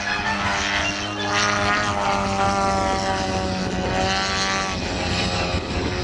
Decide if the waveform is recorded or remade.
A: recorded